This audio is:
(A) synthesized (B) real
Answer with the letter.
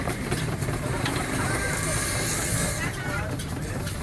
A